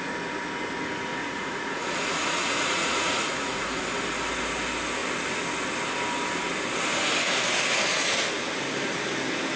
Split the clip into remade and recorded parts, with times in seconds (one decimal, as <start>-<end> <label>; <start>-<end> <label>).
0.0-1.2 recorded; 1.2-3.8 remade; 3.8-9.6 recorded